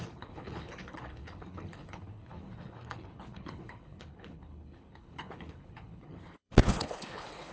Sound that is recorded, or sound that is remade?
remade